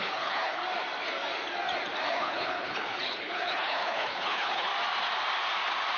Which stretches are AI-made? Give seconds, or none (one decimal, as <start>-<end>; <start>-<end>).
0.0-0.6; 2.1-4.7